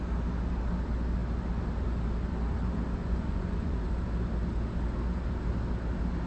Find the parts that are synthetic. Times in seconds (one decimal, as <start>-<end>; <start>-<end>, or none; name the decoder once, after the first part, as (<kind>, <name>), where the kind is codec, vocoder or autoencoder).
3.0-3.9 (vocoder, Vocos)